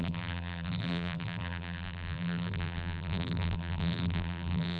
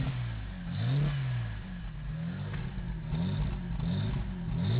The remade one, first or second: first